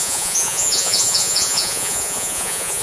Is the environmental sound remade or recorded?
remade